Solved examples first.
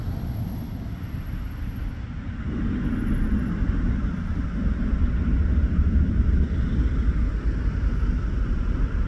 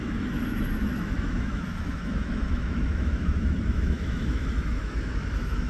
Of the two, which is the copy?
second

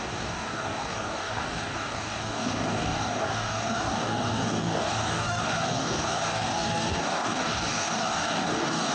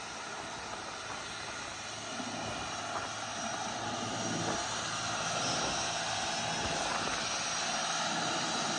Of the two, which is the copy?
first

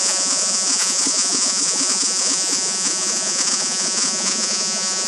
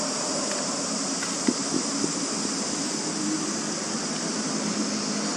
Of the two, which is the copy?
first